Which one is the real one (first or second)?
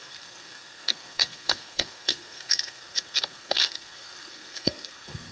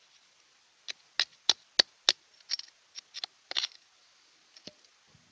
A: second